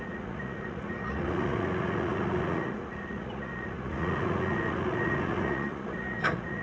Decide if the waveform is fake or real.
fake